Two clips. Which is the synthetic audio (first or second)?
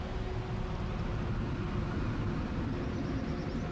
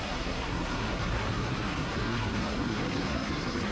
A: second